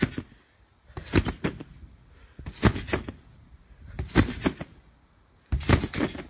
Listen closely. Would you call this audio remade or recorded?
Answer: recorded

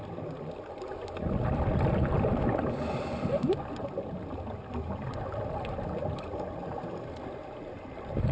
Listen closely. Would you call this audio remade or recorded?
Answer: recorded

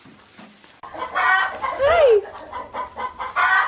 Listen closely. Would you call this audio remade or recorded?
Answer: recorded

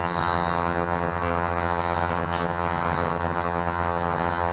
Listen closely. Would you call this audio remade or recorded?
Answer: remade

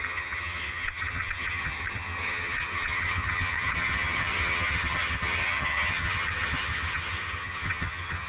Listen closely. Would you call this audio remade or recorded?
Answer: remade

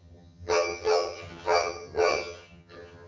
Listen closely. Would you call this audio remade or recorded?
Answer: remade